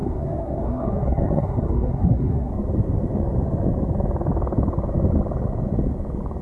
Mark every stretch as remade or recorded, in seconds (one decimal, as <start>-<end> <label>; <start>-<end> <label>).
0.0-2.5 remade; 2.5-6.4 recorded